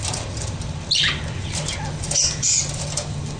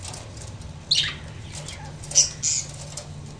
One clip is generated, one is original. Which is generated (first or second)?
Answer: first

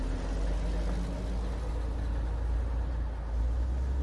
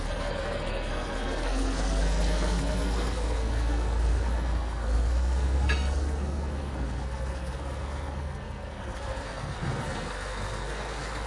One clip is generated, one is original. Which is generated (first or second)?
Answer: second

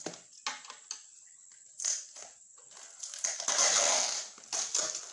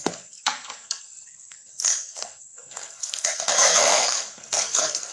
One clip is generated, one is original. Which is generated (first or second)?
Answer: second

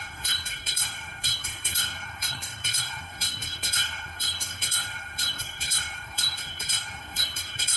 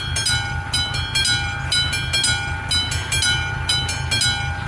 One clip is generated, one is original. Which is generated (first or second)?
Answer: first